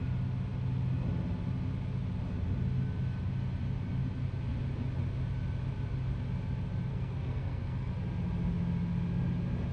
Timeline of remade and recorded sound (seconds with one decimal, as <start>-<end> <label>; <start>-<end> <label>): 0.0-6.9 recorded; 6.9-7.9 remade; 7.9-9.7 recorded